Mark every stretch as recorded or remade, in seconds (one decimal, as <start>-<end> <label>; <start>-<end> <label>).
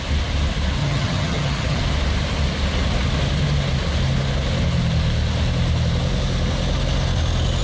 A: 0.0-0.8 recorded; 0.8-1.8 remade; 1.8-7.6 recorded